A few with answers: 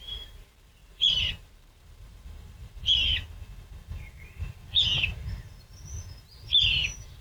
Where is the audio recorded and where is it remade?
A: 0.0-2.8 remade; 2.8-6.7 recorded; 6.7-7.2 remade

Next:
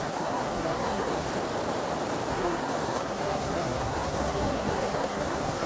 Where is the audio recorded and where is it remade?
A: 0.0-1.3 remade; 1.3-2.3 recorded; 2.3-5.7 remade

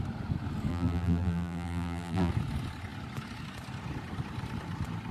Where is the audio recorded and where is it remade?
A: 0.0-0.7 recorded; 0.7-2.3 remade; 2.3-5.1 recorded

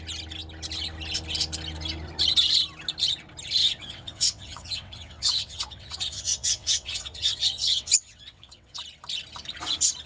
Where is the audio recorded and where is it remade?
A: 0.0-3.6 recorded; 3.6-8.8 remade; 8.8-10.1 recorded

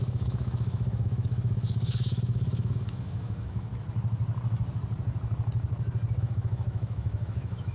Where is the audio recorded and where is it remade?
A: 0.0-3.7 remade; 3.7-6.2 recorded; 6.2-7.7 remade